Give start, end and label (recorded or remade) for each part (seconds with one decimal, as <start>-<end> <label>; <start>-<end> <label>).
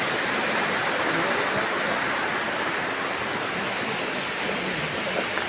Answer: 0.0-5.5 recorded